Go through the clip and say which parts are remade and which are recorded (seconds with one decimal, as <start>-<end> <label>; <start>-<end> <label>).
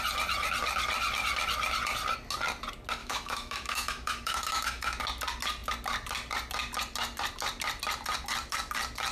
0.0-3.0 recorded; 3.0-5.0 remade; 5.0-9.1 recorded